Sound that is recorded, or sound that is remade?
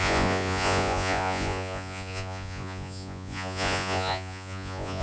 remade